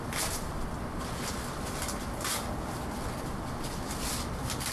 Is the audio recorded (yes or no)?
yes